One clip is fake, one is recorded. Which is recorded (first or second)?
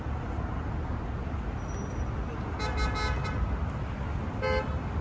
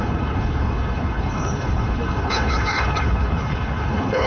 first